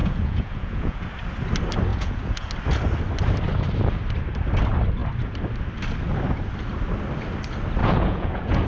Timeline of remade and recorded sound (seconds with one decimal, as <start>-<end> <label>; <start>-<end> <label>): 0.0-1.0 remade; 1.0-1.9 recorded; 1.9-2.5 remade; 2.5-7.8 recorded; 7.8-8.7 remade